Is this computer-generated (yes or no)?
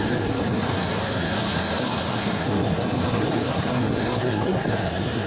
yes